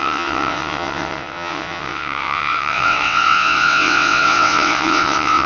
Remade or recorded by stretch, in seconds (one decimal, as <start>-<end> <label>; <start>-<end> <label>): 0.0-5.5 remade